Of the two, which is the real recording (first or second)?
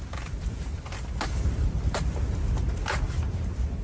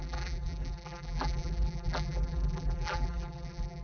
first